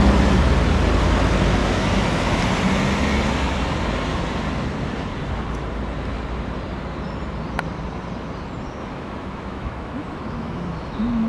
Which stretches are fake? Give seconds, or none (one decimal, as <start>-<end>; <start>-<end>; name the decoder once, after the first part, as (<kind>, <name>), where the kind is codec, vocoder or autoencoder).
1.6-2.4 (autoencoder, DAC-VAE); 8.8-11.3